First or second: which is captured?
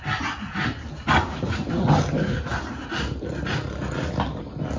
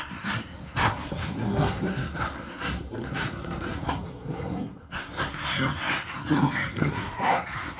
first